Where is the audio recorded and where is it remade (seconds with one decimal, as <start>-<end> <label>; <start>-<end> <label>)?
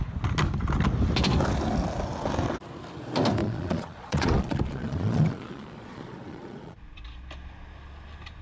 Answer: 0.0-3.4 recorded; 3.4-7.0 remade; 7.0-8.4 recorded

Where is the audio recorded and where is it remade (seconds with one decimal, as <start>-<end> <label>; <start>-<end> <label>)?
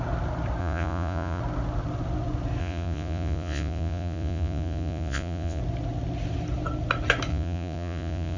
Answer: 0.0-0.6 recorded; 0.6-1.4 remade; 1.4-2.6 recorded; 2.6-5.6 remade; 5.6-7.3 recorded; 7.3-8.4 remade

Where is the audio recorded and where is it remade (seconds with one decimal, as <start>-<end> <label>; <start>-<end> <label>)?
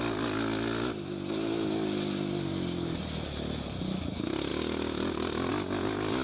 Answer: 0.0-6.2 recorded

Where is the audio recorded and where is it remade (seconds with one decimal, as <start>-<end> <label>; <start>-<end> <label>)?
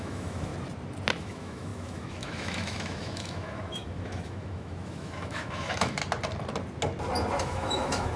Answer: 0.0-0.5 remade; 0.5-1.2 recorded; 1.2-6.0 remade; 6.0-7.4 recorded; 7.4-8.2 remade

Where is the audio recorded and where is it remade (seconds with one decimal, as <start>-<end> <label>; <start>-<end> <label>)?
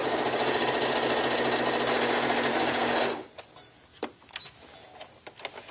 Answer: 0.0-0.7 remade; 0.7-2.5 recorded; 2.5-3.3 remade; 3.3-5.7 recorded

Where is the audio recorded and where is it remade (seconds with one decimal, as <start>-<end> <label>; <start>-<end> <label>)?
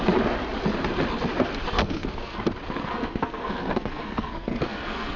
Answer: 0.0-1.8 recorded; 1.8-2.4 remade; 2.4-2.8 recorded; 2.8-5.2 remade